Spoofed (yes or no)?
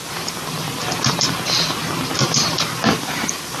no